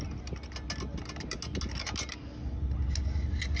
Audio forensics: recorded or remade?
recorded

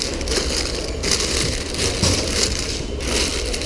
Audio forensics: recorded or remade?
remade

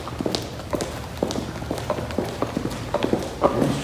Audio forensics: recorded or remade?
recorded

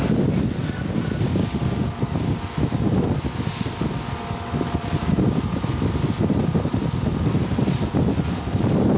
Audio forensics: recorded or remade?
recorded